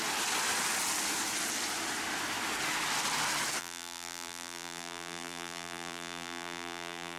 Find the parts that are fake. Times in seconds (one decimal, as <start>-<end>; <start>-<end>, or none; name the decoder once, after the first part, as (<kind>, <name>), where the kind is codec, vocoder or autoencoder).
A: 3.6-7.2 (vocoder, BigVGAN v2)